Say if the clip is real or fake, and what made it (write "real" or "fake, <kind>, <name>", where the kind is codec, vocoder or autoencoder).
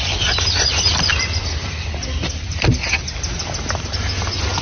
real